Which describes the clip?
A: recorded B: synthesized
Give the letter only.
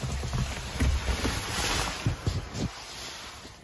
A